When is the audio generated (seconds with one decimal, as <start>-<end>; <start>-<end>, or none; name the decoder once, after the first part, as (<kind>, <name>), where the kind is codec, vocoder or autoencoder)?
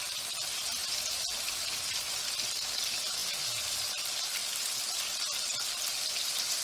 none